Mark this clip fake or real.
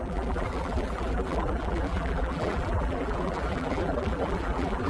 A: fake